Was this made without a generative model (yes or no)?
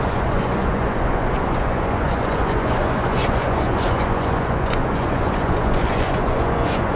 no